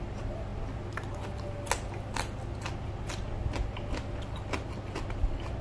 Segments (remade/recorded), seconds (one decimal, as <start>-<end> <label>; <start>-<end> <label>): 0.0-5.6 recorded